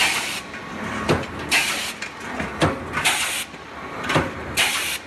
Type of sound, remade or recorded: recorded